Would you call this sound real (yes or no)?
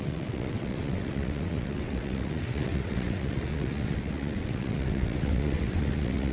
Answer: no